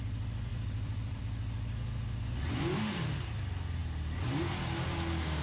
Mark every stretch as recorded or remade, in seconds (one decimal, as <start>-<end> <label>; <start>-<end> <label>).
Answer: 0.0-0.5 recorded; 0.5-1.2 remade; 1.2-5.4 recorded